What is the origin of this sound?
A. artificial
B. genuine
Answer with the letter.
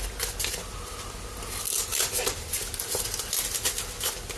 B